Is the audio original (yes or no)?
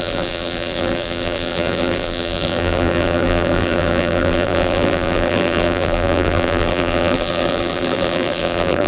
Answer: no